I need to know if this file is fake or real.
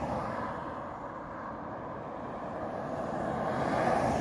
real